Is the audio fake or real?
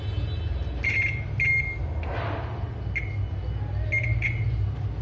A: real